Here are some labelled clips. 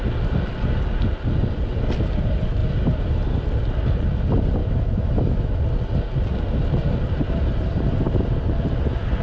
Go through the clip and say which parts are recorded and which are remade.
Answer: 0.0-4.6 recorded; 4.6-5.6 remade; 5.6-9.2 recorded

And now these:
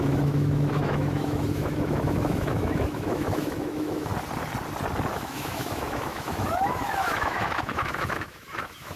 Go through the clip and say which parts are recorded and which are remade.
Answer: 0.0-4.1 remade; 4.1-5.1 recorded; 5.1-9.0 remade

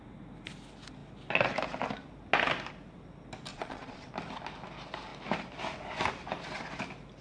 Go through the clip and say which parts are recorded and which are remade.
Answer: 0.0-3.5 recorded; 3.5-4.1 remade; 4.1-7.2 recorded

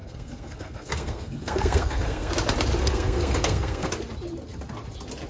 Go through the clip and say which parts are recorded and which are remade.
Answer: 0.0-2.3 remade; 2.3-2.8 recorded; 2.8-3.9 remade; 3.9-5.3 recorded

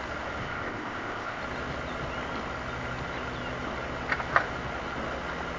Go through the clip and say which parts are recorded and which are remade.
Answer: 0.0-0.4 recorded; 0.4-1.4 remade; 1.4-5.6 recorded

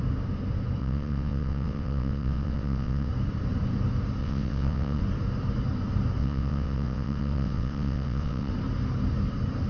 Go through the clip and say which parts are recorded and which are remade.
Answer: 0.0-0.8 recorded; 0.8-3.1 remade; 3.1-4.2 recorded; 4.2-5.0 remade; 5.0-6.2 recorded; 6.2-8.5 remade; 8.5-9.7 recorded